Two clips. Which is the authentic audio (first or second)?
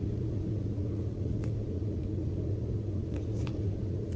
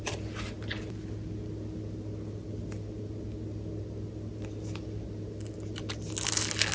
second